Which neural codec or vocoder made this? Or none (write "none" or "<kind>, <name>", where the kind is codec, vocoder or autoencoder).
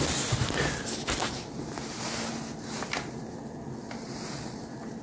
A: none